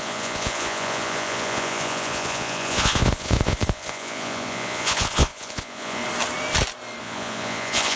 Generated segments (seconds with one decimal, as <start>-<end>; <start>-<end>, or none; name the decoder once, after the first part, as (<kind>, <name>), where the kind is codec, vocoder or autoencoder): 0.0-6.0 (vocoder, Vocos); 7.0-8.0